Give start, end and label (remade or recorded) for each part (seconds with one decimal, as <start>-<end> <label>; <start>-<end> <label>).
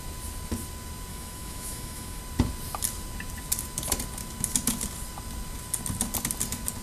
0.0-1.1 recorded; 1.1-2.2 remade; 2.2-6.8 recorded